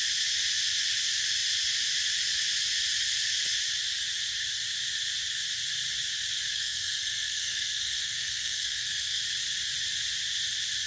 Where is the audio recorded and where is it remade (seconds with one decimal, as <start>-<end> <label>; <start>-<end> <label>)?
0.0-6.5 recorded; 6.5-9.2 remade; 9.2-10.9 recorded